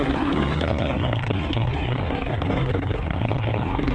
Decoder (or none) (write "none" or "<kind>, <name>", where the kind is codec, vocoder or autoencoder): codec, SNAC